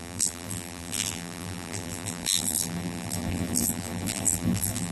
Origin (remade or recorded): remade